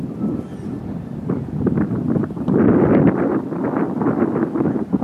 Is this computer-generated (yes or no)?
no